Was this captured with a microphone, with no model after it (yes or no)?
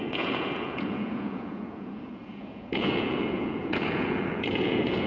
no